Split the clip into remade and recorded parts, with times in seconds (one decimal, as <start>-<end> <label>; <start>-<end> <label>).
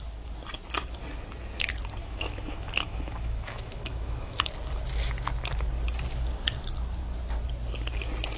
0.0-2.0 recorded; 2.0-4.5 remade; 4.5-8.4 recorded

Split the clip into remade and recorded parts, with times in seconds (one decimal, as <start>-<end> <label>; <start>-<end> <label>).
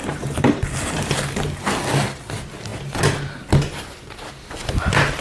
0.0-0.6 remade; 0.6-5.2 recorded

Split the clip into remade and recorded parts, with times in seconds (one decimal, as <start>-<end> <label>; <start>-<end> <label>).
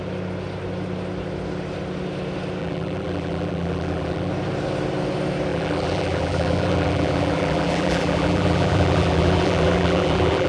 0.0-2.6 recorded; 2.6-4.3 remade; 4.3-5.5 recorded; 5.5-10.5 remade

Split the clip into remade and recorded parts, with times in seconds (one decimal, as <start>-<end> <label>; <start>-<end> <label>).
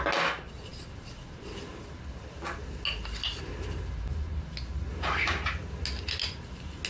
0.0-6.9 recorded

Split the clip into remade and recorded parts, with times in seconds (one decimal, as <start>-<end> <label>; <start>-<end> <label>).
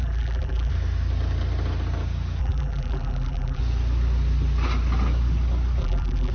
0.0-0.7 remade; 0.7-2.4 recorded; 2.4-3.6 remade; 3.6-5.8 recorded; 5.8-6.3 remade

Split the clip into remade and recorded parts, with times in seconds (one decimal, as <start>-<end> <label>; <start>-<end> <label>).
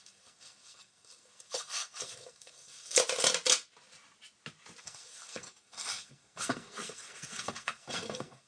0.0-3.0 remade; 3.0-4.8 recorded; 4.8-8.5 remade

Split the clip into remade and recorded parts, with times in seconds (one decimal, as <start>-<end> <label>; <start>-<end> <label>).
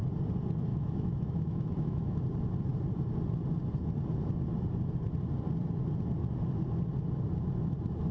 0.0-0.7 recorded; 0.7-2.2 remade; 2.2-8.1 recorded